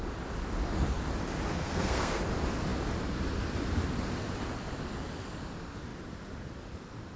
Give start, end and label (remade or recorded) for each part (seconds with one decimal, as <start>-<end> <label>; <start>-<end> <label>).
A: 0.0-1.5 recorded; 1.5-2.2 remade; 2.2-7.2 recorded